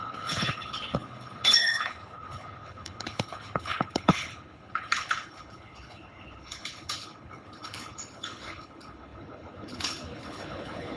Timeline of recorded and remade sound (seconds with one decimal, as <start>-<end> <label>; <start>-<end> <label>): 0.0-11.0 remade